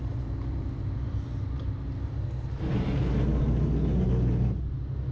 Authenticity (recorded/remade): recorded